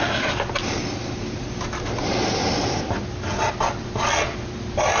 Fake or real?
real